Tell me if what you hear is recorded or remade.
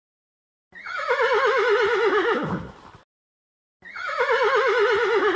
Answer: recorded